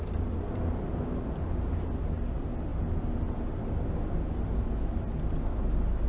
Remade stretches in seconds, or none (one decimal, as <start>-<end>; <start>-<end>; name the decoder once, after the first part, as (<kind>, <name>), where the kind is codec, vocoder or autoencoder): none